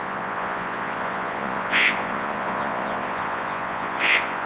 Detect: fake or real fake